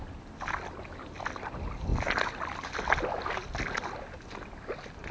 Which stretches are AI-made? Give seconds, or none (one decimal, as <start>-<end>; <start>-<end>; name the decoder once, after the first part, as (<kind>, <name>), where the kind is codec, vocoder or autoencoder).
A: none